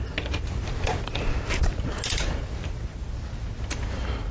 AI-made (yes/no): no